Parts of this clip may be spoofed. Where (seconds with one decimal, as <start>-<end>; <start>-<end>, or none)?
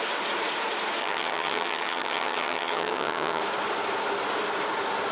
1.0-3.4